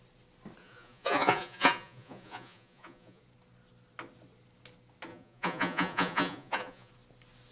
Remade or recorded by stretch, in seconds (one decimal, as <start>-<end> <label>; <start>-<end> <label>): 0.0-0.6 recorded; 0.6-3.2 remade; 3.2-5.1 recorded; 5.1-6.9 remade; 6.9-7.5 recorded